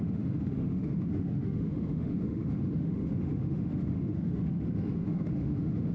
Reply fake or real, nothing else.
fake